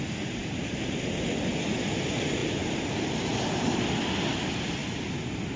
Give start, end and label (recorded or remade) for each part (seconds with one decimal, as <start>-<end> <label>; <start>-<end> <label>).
0.0-5.6 recorded